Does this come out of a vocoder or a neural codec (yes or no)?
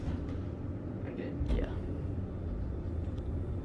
no